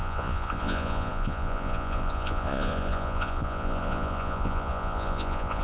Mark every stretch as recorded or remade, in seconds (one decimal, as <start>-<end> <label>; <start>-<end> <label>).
0.0-5.6 remade